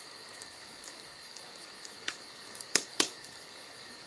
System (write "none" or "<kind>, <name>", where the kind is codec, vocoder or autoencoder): codec, DAC